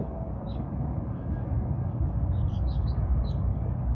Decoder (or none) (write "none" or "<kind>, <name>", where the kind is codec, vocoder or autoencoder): codec, DAC